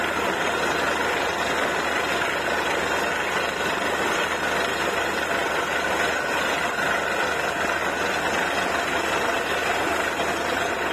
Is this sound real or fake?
real